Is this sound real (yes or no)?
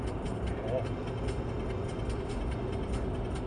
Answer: yes